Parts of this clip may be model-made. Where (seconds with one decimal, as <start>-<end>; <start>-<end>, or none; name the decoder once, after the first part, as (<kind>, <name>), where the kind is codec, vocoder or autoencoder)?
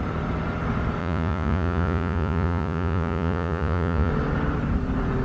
1.0-4.1 (vocoder, Vocos)